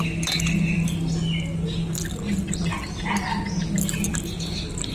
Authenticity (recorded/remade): recorded